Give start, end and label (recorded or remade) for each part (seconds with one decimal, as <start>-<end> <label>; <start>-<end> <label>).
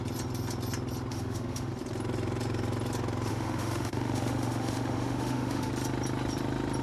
0.0-1.1 recorded; 1.1-1.7 remade; 1.7-3.3 recorded; 3.3-5.7 remade; 5.7-6.8 recorded